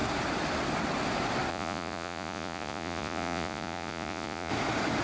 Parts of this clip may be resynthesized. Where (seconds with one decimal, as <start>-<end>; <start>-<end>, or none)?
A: 1.5-4.5